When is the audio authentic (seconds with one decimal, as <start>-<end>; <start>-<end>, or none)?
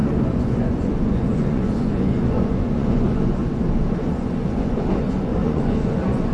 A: 3.4-4.0